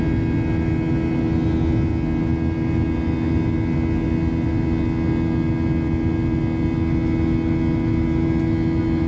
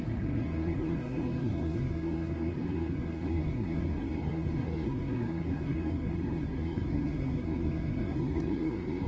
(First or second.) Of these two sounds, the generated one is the second